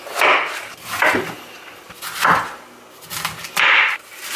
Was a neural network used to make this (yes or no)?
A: no